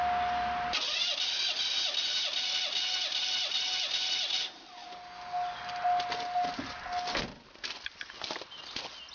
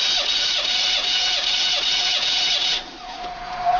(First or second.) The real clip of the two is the first